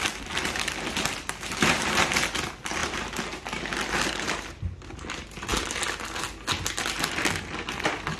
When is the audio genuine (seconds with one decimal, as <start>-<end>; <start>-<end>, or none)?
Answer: 0.0-8.2

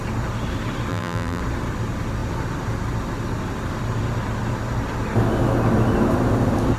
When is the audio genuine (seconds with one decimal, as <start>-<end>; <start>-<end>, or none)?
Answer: 0.0-0.9; 1.4-6.8

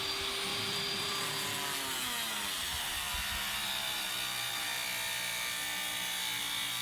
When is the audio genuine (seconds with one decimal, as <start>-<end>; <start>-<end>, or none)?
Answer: 0.0-0.5; 1.5-6.8

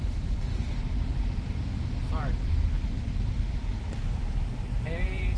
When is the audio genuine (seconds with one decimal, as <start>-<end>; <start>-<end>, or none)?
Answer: 0.0-1.1; 1.7-3.6; 4.2-5.4

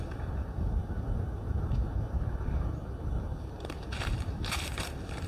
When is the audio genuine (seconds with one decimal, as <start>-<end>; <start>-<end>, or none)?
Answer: 0.8-4.0

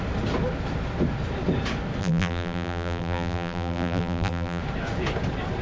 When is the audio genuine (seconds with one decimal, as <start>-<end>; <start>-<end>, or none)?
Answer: 0.0-2.0; 4.6-5.6